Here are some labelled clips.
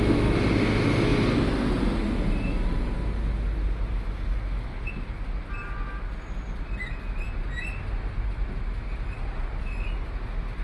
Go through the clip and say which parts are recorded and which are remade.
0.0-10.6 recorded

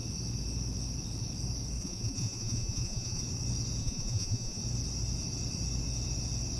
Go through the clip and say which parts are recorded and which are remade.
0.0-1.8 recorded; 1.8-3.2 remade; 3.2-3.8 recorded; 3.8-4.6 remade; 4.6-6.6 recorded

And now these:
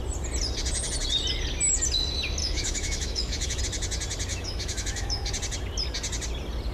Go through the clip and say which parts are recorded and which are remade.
0.0-2.4 recorded; 2.4-3.6 remade; 3.6-4.3 recorded; 4.3-5.3 remade; 5.3-6.7 recorded

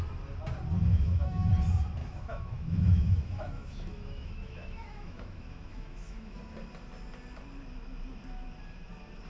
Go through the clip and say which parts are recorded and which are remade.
0.0-0.9 recorded; 0.9-1.5 remade; 1.5-2.0 recorded; 2.0-6.4 remade; 6.4-9.3 recorded

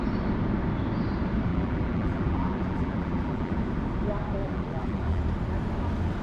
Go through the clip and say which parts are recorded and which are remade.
0.0-1.5 recorded; 1.5-3.6 remade; 3.6-4.4 recorded; 4.4-5.2 remade; 5.2-6.2 recorded

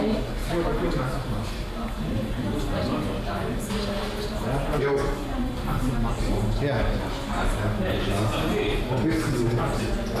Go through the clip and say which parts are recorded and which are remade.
0.0-0.4 recorded; 0.4-1.5 remade; 1.5-10.2 recorded